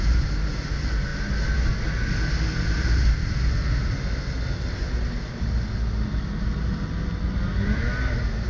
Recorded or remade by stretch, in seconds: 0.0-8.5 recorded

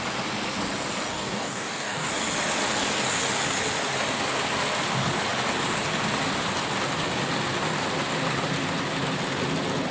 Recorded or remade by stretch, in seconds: 0.0-1.1 recorded; 1.1-2.1 remade; 2.1-9.9 recorded

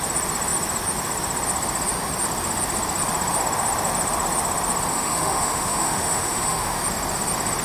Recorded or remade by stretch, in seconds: 0.0-4.9 recorded; 4.9-6.8 remade; 6.8-7.6 recorded

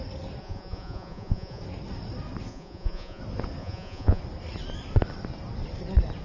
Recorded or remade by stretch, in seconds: 0.0-0.4 recorded; 0.4-1.6 remade; 1.6-2.5 recorded; 2.5-3.2 remade; 3.2-3.6 recorded; 3.6-4.2 remade; 4.2-6.2 recorded

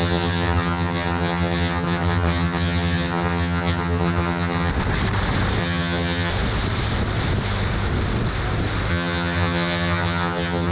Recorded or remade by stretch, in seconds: 0.0-4.7 remade; 4.7-5.6 recorded; 5.6-6.3 remade; 6.3-8.9 recorded; 8.9-10.7 remade

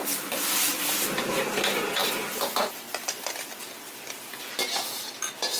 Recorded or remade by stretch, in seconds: 0.0-5.6 recorded

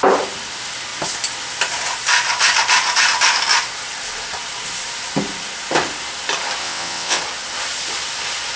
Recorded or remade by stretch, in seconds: 0.0-6.6 recorded; 6.6-7.2 remade; 7.2-8.6 recorded

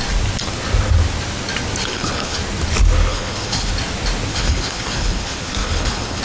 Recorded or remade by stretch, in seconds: 0.0-1.8 recorded; 1.8-2.4 remade; 2.4-3.1 recorded; 3.1-3.7 remade; 3.7-4.3 recorded; 4.3-6.2 remade